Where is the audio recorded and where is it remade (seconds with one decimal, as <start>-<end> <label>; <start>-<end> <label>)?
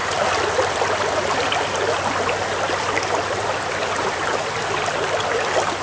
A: 0.0-0.8 remade; 0.8-5.8 recorded